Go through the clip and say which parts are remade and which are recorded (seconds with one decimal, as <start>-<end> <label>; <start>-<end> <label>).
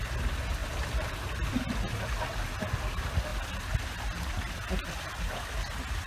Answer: 0.0-0.6 recorded; 0.6-1.5 remade; 1.5-6.1 recorded